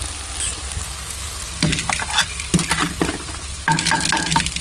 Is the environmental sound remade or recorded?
recorded